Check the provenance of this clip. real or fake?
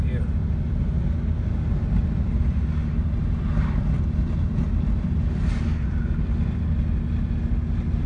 real